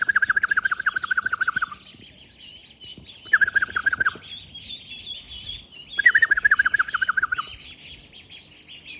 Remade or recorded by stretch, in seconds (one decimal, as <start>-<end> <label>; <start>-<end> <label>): 0.0-9.0 recorded

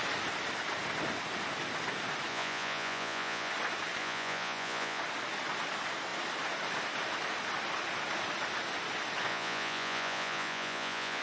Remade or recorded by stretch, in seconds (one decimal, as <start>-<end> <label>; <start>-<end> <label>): 0.0-2.3 recorded; 2.3-3.5 remade; 3.5-4.0 recorded; 4.0-5.0 remade; 5.0-9.3 recorded; 9.3-11.2 remade

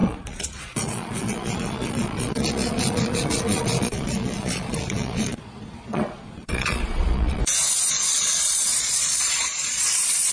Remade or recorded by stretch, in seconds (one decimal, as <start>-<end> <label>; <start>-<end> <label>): 0.0-7.4 remade; 7.4-7.9 recorded; 7.9-10.3 remade

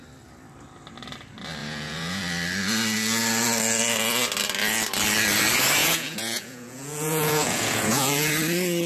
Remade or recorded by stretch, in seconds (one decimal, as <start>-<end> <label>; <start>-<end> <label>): 0.0-1.6 recorded; 1.6-2.2 remade; 2.2-5.8 recorded; 5.8-8.3 remade; 8.3-8.9 recorded

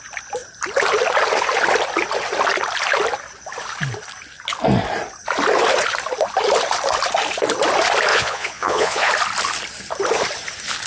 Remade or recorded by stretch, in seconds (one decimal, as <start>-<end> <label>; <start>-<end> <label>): 0.0-8.1 recorded; 8.1-9.1 remade; 9.1-10.9 recorded

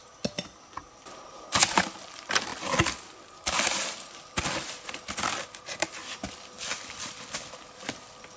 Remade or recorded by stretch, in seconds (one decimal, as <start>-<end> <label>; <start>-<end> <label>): 0.0-8.4 recorded